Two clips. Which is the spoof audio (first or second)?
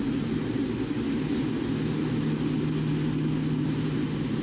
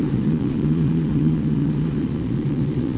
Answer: second